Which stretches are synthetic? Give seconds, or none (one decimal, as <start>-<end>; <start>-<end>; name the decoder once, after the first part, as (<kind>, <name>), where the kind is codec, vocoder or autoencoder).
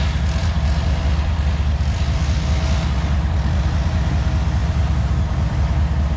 0.4-4.1 (vocoder, BigVGAN v2); 4.6-5.6